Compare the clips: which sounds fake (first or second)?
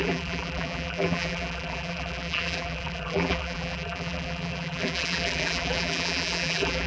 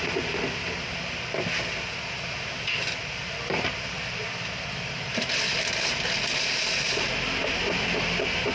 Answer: first